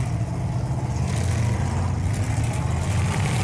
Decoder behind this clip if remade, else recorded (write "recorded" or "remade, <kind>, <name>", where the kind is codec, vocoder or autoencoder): recorded